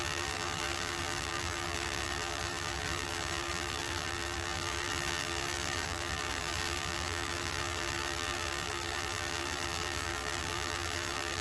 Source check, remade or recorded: remade